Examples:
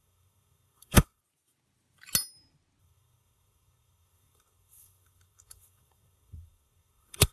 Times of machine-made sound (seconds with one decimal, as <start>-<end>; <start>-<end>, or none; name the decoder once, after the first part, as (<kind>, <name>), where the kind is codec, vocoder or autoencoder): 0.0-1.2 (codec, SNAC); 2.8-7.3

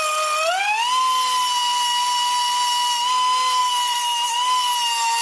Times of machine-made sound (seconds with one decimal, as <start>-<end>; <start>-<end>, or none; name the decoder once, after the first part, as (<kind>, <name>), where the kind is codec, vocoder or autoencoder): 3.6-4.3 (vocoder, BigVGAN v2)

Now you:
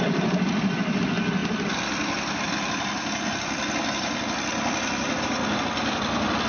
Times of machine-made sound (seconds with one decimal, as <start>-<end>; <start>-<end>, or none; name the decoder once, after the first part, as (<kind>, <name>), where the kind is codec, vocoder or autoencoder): none

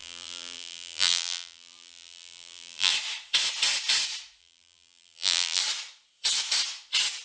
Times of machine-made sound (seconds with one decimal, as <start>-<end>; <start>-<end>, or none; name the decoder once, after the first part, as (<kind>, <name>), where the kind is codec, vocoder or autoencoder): 0.0-2.9 (vocoder, BigVGAN v2); 4.4-5.6

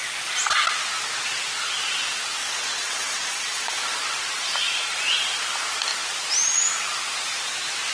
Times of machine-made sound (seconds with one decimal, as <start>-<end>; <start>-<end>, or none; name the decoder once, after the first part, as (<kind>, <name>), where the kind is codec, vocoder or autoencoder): 2.4-3.8 (vocoder, WaveNeXt)

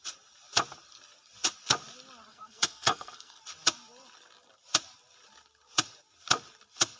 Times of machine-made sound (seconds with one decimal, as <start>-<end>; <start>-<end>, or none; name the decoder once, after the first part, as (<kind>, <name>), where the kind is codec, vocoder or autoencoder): 2.3-3.4 (codec, SNAC)

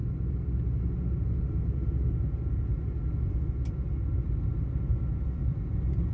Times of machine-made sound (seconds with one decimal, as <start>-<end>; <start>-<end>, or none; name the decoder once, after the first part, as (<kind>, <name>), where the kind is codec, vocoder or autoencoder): none